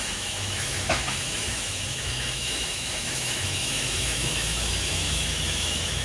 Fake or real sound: fake